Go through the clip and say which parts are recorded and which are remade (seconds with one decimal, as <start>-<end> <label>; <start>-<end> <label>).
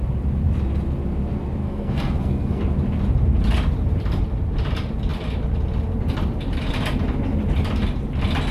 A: 0.0-1.6 recorded; 1.6-2.6 remade; 2.6-8.5 recorded